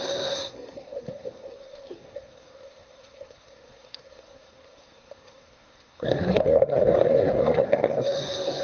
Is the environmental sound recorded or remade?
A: remade